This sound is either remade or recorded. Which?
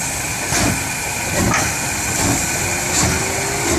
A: recorded